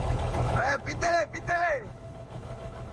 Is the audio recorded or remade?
remade